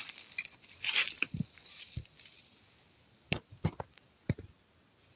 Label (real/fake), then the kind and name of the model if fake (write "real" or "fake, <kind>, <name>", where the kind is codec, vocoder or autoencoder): fake, vocoder, BigVGAN v2